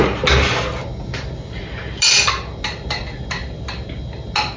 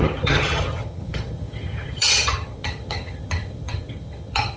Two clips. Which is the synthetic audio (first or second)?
second